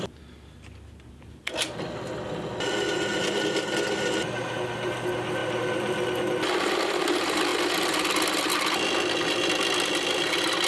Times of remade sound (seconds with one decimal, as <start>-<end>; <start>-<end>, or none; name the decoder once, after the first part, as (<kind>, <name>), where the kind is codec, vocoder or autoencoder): none